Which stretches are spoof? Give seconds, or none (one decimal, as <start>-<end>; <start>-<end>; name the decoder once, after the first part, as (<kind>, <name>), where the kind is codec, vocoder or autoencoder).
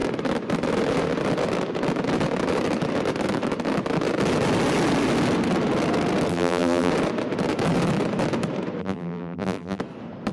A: 6.3-6.9 (vocoder, BigVGAN v2); 8.8-9.8